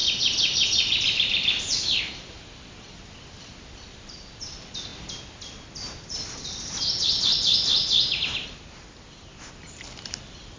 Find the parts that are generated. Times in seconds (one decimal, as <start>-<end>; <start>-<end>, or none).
0.0-4.9; 9.7-10.6